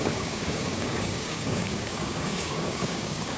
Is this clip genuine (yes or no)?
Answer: no